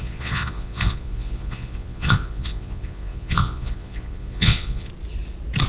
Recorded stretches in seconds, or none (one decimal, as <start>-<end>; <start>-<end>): 4.9-5.7